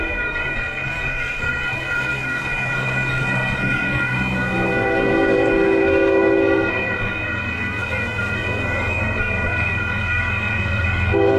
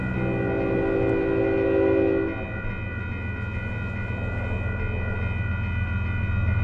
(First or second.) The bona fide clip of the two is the second